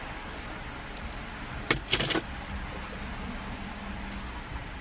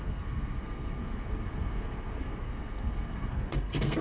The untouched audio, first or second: first